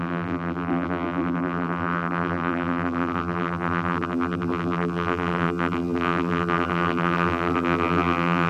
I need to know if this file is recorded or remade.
remade